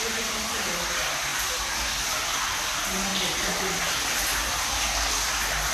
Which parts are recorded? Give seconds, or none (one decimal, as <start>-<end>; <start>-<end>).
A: 0.0-5.7